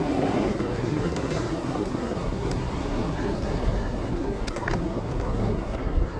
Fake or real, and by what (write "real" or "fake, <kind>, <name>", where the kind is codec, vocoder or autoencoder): fake, codec, SNAC